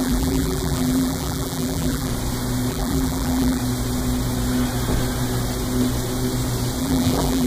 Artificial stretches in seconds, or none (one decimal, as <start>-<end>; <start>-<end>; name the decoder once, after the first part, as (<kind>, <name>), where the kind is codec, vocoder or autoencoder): 0.0-2.1 (vocoder, BigVGAN v2); 2.7-3.6; 6.8-7.5